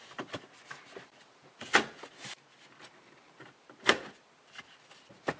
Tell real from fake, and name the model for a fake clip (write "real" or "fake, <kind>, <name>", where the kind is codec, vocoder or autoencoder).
real